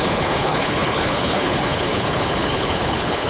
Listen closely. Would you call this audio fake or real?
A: fake